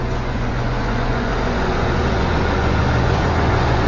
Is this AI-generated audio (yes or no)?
yes